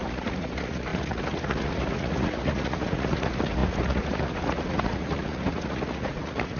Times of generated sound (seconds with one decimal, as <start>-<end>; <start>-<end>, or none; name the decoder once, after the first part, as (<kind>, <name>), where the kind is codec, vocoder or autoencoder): 0.0-6.6 (vocoder, Vocos)